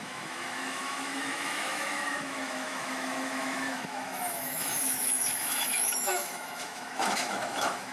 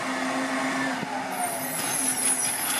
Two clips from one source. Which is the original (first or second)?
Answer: second